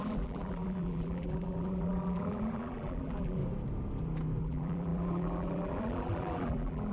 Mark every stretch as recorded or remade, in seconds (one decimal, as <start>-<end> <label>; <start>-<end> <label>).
0.0-3.4 remade; 3.4-4.4 recorded; 4.4-6.9 remade